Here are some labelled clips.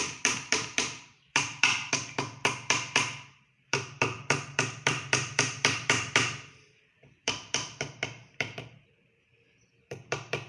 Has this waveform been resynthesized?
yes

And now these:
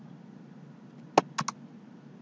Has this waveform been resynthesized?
no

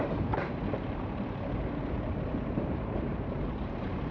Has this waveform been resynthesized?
yes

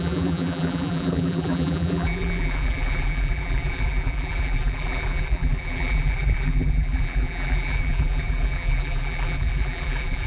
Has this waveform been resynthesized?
yes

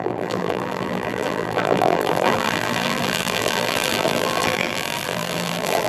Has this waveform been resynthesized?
yes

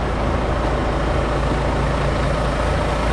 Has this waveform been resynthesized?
no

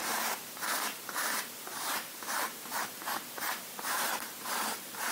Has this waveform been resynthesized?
yes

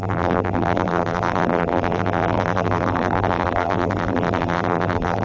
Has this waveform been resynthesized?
yes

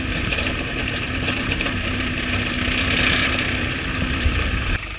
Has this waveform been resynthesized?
yes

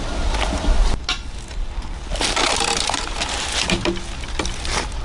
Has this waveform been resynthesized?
no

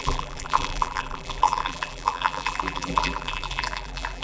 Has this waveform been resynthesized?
yes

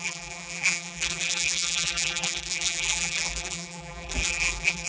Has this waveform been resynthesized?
yes